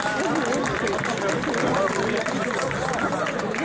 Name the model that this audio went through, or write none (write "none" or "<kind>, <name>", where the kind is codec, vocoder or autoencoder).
none